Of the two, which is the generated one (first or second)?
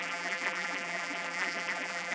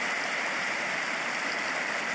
first